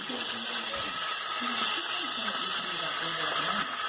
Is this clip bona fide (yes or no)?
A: yes